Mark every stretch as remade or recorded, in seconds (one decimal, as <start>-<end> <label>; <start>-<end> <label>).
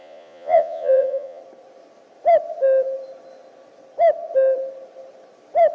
0.0-1.4 remade; 1.4-5.7 recorded